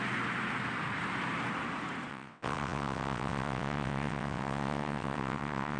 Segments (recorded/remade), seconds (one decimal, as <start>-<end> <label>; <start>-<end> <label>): 0.0-2.1 recorded; 2.1-5.8 remade